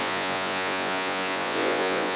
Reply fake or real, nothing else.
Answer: fake